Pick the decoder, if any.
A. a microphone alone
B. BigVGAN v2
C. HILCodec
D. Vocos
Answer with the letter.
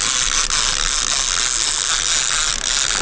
A